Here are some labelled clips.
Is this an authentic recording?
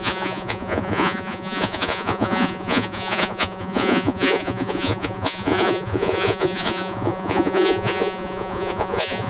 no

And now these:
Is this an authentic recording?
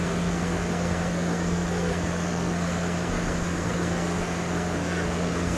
no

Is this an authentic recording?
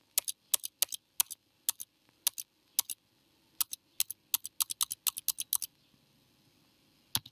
yes